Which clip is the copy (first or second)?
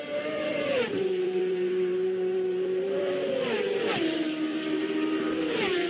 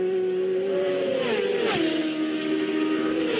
first